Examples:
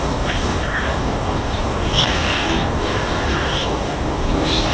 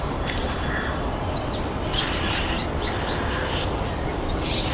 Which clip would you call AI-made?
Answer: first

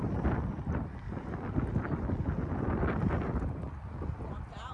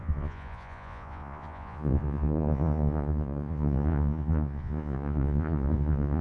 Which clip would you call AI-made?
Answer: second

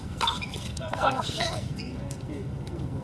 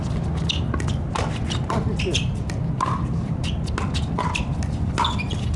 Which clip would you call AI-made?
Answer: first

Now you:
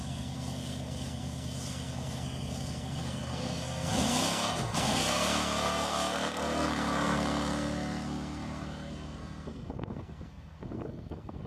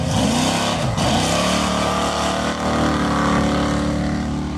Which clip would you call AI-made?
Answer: first